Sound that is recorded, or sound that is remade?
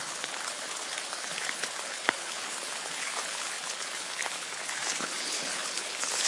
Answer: remade